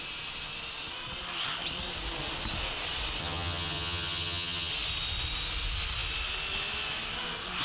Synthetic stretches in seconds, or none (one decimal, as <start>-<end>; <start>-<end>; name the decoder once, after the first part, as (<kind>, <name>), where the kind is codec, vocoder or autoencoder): 3.2-4.7 (vocoder, HiFi-GAN)